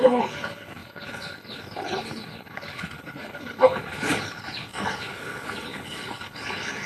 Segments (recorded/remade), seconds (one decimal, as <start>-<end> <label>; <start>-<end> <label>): 0.0-6.9 remade